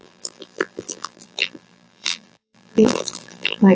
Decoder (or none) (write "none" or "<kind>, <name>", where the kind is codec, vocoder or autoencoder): vocoder, BigVGAN v2